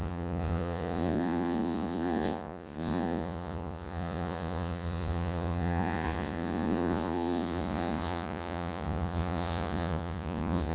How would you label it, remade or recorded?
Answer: remade